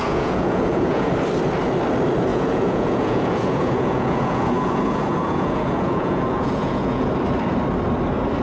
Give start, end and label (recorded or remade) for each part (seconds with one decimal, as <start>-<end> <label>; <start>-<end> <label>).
0.0-1.1 remade; 1.1-2.3 recorded; 2.3-7.1 remade; 7.1-8.4 recorded